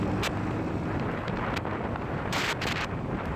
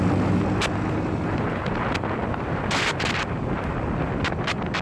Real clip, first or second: second